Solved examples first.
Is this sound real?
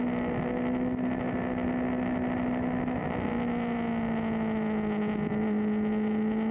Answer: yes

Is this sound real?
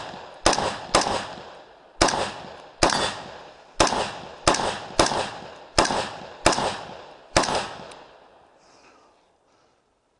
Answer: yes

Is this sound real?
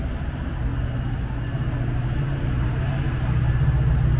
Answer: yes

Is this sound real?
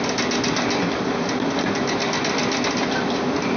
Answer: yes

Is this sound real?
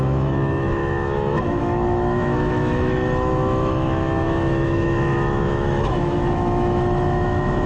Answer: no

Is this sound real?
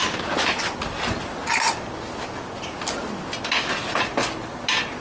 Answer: yes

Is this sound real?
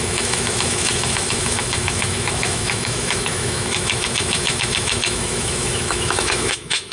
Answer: no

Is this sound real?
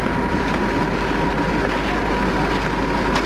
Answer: yes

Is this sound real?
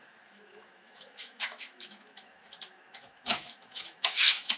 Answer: no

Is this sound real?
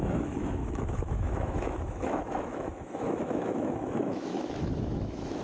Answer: no